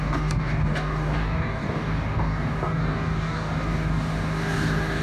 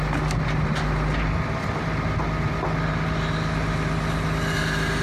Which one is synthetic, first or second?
first